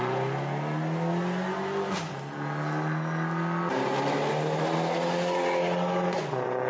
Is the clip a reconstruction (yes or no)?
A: no